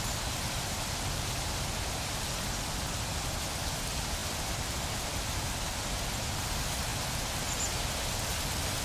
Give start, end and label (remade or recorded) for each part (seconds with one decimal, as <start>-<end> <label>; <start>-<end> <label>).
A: 0.0-8.8 recorded